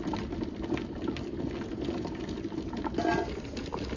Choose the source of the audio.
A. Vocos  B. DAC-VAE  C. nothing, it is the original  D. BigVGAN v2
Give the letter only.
C